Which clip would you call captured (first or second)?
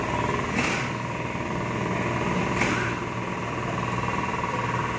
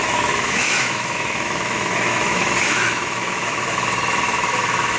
first